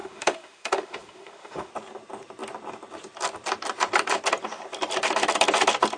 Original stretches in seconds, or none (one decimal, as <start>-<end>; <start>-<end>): 1.7-6.0